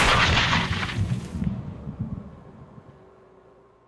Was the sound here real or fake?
fake